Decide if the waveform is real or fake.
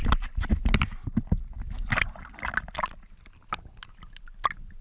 real